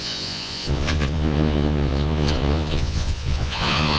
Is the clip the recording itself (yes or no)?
no